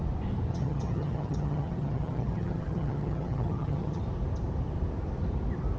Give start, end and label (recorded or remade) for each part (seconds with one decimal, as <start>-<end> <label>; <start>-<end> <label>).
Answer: 0.0-0.5 recorded; 0.5-4.0 remade; 4.0-5.8 recorded